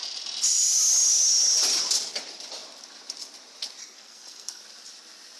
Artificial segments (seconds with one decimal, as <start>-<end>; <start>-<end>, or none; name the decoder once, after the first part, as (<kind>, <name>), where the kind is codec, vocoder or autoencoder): 3.8-4.6 (codec, SNAC)